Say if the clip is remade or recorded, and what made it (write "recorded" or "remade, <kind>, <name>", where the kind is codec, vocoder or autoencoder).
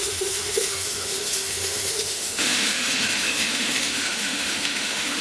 remade, autoencoder, DAC-VAE